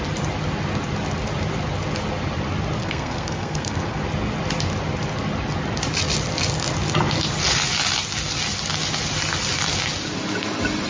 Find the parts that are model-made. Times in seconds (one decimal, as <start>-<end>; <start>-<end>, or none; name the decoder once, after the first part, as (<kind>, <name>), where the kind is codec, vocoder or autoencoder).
2.8-4.0 (codec, SNAC)